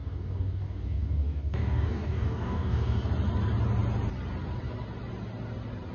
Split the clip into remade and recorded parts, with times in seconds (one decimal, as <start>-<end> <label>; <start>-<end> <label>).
0.0-3.1 remade; 3.1-5.9 recorded